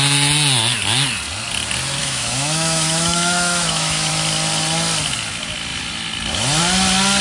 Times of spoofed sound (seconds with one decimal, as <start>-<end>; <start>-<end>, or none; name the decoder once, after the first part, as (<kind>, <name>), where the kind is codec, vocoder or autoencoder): 2.0-4.1 (autoencoder, DAC-VAE)